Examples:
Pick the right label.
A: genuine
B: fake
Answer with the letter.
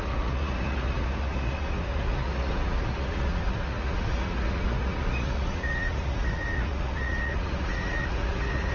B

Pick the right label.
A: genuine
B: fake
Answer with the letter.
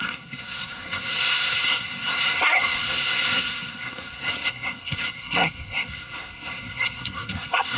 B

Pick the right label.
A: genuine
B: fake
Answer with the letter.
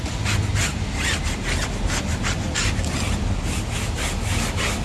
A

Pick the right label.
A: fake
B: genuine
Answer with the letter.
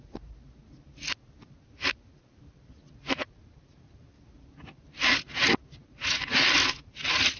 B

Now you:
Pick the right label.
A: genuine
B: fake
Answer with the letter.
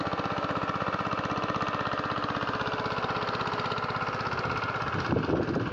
A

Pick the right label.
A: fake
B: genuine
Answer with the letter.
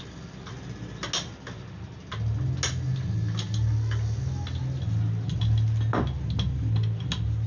B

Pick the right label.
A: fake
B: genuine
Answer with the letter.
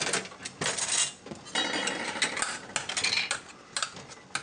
B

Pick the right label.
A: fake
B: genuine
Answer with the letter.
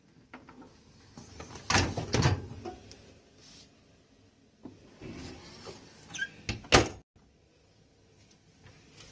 B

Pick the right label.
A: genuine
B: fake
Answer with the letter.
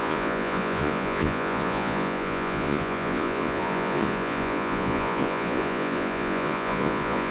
B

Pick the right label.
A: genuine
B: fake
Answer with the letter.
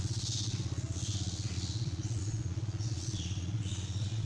B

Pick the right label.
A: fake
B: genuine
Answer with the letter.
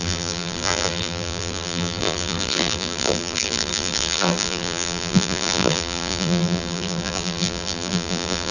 A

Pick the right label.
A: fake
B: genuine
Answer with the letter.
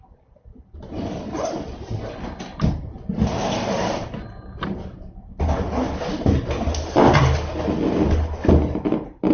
B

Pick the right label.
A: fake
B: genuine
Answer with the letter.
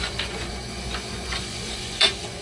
A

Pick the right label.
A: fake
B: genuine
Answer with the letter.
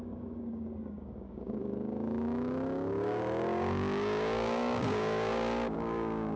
A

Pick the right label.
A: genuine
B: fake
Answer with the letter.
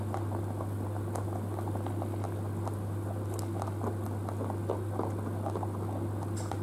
A